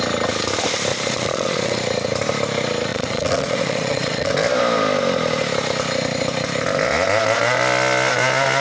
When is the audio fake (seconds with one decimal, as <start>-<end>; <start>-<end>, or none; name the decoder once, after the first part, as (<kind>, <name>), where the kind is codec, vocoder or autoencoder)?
0.9-1.8 (vocoder, Vocos); 2.9-4.3